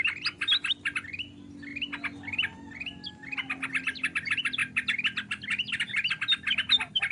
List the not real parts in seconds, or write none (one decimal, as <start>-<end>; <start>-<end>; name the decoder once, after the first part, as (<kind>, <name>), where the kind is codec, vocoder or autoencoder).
none